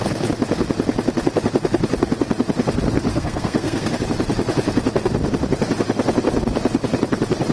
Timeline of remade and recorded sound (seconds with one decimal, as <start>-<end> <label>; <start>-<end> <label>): 0.0-3.1 recorded; 3.1-3.9 remade; 3.9-7.5 recorded